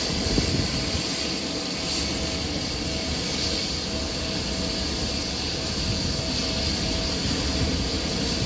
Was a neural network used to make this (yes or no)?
no